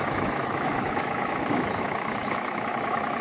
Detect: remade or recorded remade